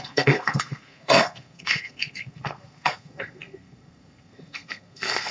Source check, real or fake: fake